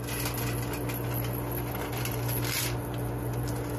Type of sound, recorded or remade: recorded